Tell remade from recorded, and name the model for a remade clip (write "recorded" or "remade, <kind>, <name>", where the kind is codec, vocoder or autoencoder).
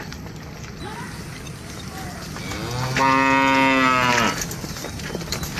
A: recorded